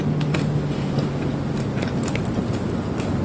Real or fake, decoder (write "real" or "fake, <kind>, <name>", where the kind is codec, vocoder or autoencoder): real